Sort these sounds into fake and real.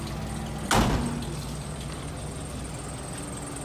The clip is real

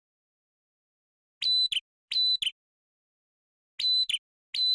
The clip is real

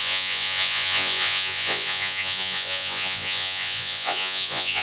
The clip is fake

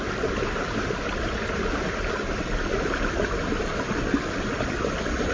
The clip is real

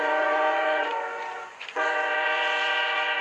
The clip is fake